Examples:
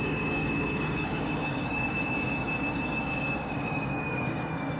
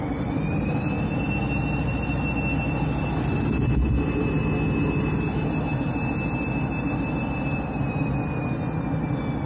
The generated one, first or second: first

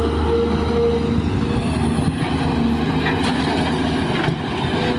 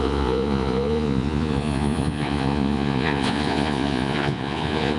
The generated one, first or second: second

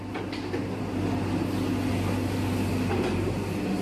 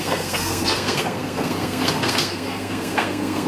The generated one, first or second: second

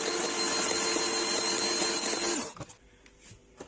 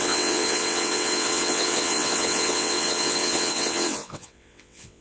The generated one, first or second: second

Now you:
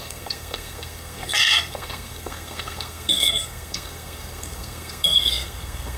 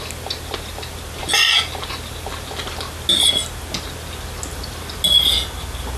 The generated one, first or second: first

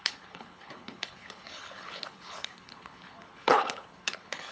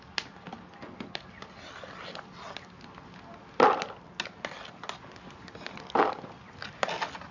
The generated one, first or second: first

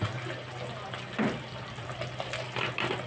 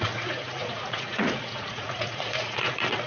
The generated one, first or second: second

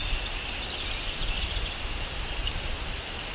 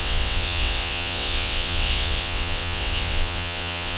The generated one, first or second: second